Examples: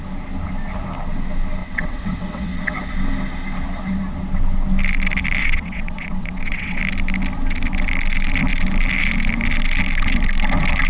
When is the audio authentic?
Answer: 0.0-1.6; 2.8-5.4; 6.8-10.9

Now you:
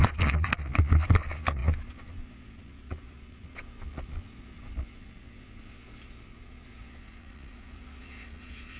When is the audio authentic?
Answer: none

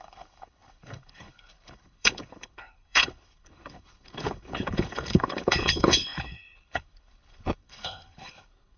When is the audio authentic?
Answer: none

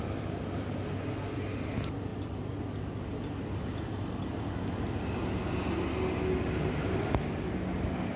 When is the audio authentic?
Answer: 0.0-8.2